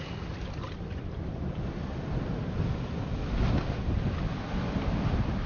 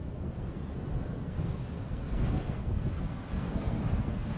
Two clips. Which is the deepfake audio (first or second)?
second